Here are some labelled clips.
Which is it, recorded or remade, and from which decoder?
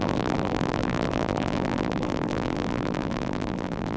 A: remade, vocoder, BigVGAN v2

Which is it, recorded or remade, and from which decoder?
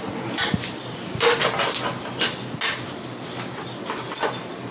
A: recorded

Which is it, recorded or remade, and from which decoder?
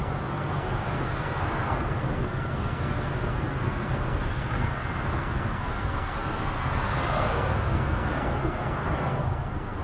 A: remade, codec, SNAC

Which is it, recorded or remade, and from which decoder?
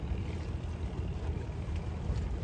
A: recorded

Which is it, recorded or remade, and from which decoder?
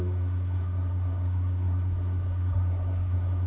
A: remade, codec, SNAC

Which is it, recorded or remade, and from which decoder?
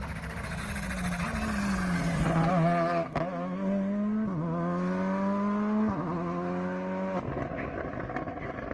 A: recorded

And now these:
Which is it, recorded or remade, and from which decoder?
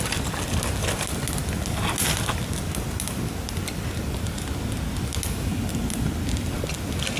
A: recorded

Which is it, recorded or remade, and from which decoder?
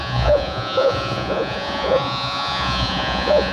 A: remade, vocoder, Vocos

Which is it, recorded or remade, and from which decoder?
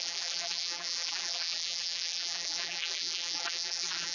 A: remade, vocoder, BigVGAN v2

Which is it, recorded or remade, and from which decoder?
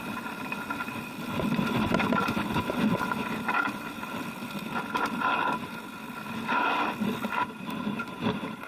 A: recorded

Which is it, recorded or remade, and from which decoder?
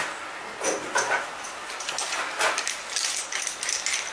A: recorded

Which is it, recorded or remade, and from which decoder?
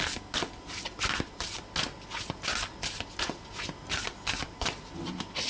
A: recorded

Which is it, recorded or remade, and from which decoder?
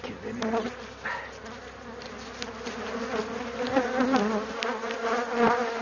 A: recorded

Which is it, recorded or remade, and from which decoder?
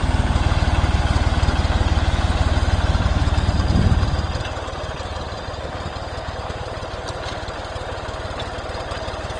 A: recorded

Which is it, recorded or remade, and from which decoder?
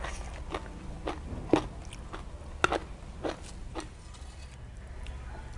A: recorded